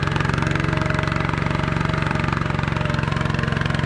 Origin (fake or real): fake